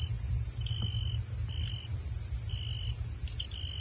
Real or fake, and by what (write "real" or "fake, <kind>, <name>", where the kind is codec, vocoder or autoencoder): real